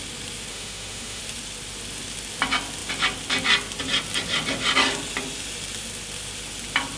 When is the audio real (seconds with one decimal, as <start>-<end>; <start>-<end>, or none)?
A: 0.0-0.5; 1.2-7.0